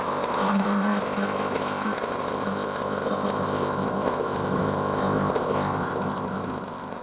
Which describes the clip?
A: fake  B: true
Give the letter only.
A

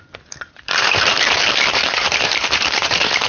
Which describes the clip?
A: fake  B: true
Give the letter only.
A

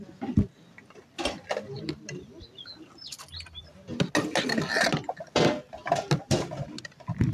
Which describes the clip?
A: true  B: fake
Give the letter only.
A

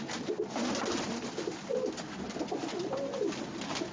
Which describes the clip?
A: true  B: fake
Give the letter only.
A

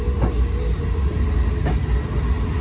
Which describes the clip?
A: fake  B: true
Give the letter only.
B